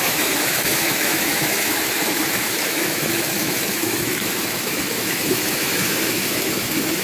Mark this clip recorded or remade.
remade